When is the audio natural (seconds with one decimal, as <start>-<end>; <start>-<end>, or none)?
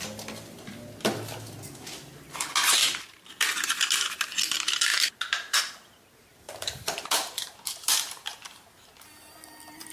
0.0-2.8; 3.3-6.3; 8.9-9.9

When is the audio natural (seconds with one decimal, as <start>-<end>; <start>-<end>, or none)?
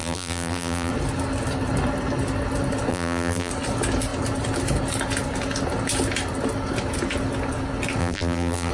0.9-2.9; 3.5-8.0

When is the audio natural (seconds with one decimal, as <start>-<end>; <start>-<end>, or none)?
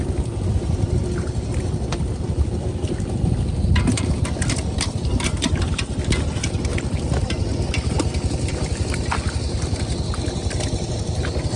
0.0-11.6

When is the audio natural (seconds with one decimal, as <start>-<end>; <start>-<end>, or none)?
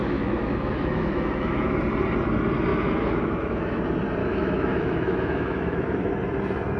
1.8-2.7; 3.8-4.2; 6.1-6.8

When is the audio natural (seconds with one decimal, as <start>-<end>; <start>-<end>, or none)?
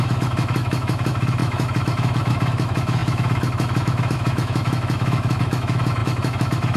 none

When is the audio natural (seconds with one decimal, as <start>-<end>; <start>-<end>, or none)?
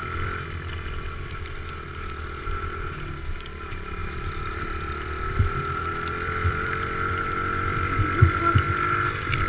1.3-4.0; 8.8-9.5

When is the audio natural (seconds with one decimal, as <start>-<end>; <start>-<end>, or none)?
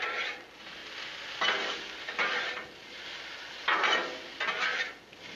0.8-1.7; 4.0-5.4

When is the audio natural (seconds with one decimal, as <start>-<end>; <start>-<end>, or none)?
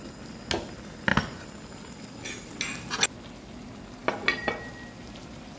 0.0-5.6